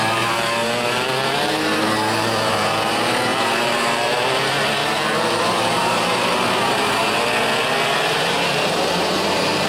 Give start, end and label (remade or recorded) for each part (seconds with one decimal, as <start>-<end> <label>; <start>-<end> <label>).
0.0-7.0 remade; 7.0-8.1 recorded; 8.1-9.7 remade